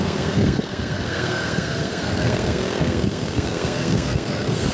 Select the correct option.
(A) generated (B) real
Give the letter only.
A